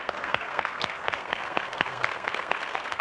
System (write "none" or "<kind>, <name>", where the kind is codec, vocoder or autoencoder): codec, SNAC